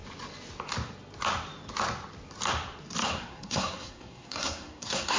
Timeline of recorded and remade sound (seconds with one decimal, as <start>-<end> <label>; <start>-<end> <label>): 0.0-3.0 recorded; 3.0-5.2 remade